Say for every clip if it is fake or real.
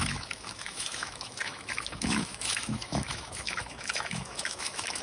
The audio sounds fake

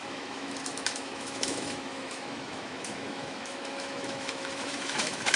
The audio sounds fake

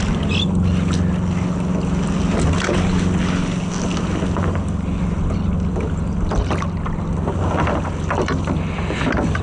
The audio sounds real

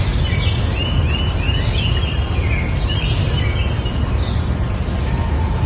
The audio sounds real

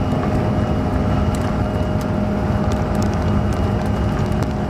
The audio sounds real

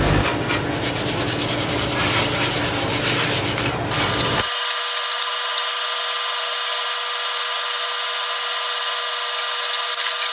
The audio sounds real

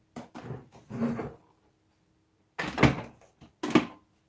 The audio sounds real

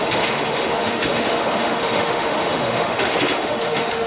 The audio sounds fake